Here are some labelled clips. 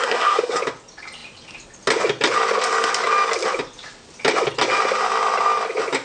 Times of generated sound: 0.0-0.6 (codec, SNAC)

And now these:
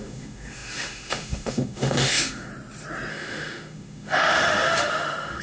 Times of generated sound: 0.0-2.5 (autoencoder, DAC-VAE); 3.1-5.4

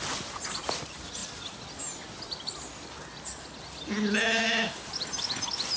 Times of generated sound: none

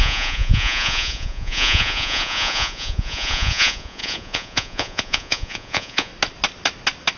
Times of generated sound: 0.0-6.1 (vocoder, Vocos)

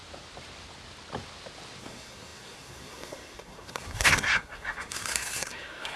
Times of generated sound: 1.8-6.0 (codec, SNAC)

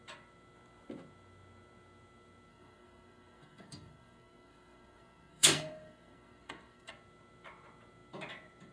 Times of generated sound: 2.5-6.9 (codec, SNAC)

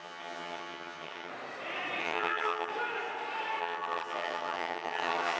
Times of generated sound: 0.0-1.3 (vocoder, HiFi-GAN); 2.0-2.7; 3.6-5.4